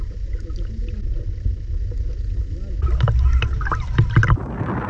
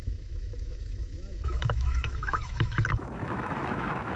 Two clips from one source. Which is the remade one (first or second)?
second